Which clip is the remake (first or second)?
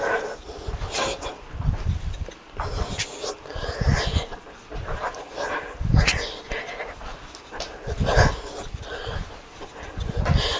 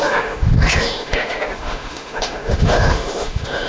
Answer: second